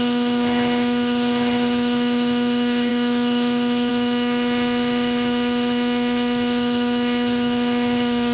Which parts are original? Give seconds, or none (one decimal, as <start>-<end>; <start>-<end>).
none